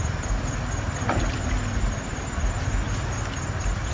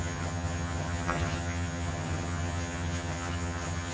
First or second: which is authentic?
first